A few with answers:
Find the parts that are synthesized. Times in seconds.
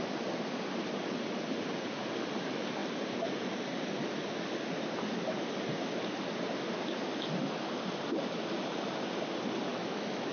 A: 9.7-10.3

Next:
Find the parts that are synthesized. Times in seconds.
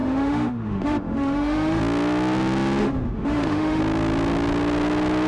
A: 0.0-1.8; 2.8-3.8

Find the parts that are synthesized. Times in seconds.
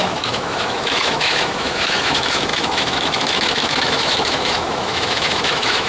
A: 0.0-5.9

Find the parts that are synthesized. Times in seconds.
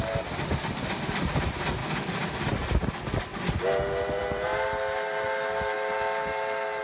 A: none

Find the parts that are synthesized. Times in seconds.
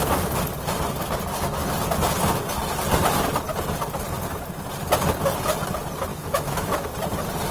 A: 6.1-6.9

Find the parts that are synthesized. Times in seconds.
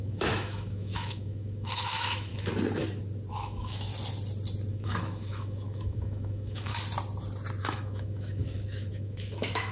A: 0.0-2.3; 3.3-3.9; 4.7-6.7; 7.6-9.7